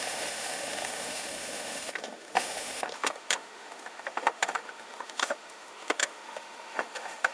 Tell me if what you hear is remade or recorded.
remade